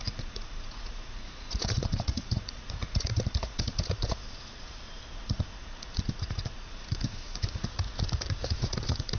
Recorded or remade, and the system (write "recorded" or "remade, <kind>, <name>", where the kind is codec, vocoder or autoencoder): remade, vocoder, Vocos